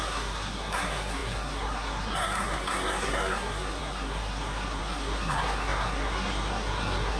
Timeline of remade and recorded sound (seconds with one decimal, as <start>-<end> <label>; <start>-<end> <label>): 0.0-7.2 remade